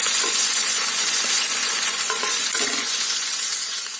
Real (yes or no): no